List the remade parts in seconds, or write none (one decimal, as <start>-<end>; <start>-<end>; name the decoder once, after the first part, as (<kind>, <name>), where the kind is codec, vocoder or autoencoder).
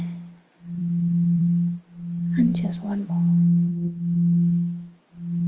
2.5-3.1 (autoencoder, DAC-VAE); 3.7-5.0